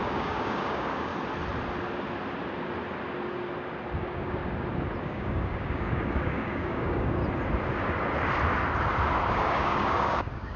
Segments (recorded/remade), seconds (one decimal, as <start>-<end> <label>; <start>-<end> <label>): 0.0-1.1 remade; 1.1-4.0 recorded; 4.0-4.4 remade; 4.4-5.0 recorded; 5.0-7.2 remade; 7.2-9.3 recorded; 9.3-10.6 remade